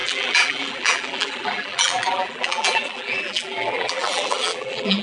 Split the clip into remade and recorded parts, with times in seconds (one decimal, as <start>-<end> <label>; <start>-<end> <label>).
0.0-5.0 remade